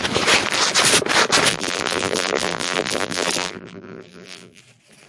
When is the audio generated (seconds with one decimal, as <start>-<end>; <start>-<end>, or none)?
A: 1.5-4.6